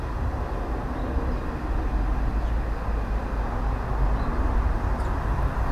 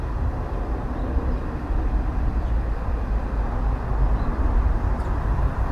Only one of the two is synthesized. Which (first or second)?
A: second